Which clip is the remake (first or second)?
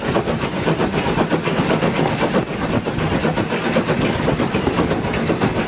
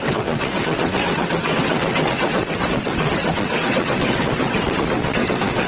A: second